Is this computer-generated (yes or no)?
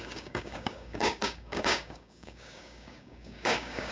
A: yes